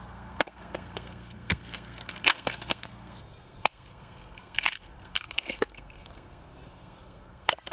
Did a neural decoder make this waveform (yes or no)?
yes